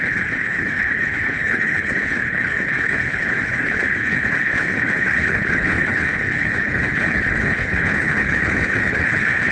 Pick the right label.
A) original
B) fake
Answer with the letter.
B